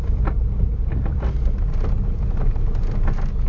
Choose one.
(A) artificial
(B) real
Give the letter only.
B